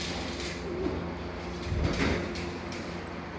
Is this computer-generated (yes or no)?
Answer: yes